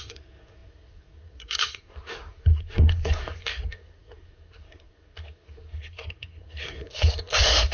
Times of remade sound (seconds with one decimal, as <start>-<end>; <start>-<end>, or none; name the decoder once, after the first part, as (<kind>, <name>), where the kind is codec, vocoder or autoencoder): 0.0-7.7 (codec, SNAC)